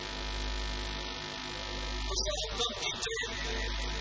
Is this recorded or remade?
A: recorded